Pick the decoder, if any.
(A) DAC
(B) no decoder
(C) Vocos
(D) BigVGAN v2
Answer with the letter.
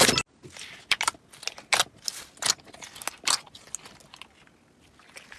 B